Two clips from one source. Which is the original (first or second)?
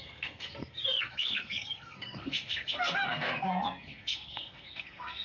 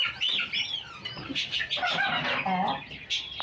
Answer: second